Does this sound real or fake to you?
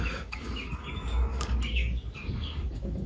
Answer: fake